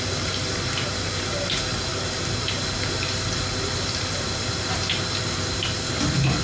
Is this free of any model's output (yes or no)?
yes